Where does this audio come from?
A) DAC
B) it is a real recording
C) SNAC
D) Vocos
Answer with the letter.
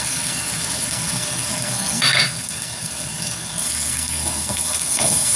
C